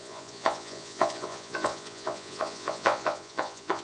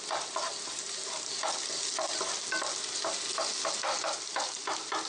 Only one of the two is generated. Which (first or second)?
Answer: first